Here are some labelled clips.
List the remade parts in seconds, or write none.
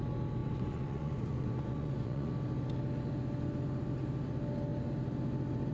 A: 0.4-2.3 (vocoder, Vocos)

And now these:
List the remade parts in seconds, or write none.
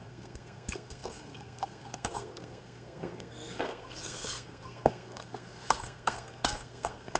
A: 0.0-7.2 (codec, SNAC)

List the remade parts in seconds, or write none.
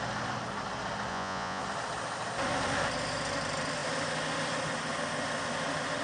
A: 1.1-1.6 (vocoder, Vocos)